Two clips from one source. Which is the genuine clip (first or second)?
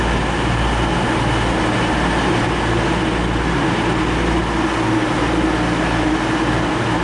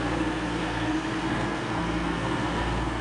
first